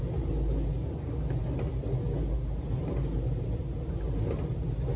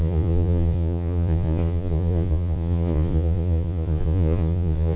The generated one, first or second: second